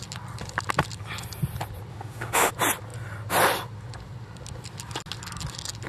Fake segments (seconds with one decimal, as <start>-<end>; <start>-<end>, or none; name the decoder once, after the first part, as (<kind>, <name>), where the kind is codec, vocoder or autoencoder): 1.9-2.5 (autoencoder, DAC-VAE)